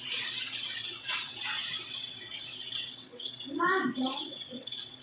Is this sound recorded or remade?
remade